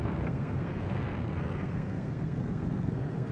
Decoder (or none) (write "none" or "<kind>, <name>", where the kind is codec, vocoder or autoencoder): codec, SNAC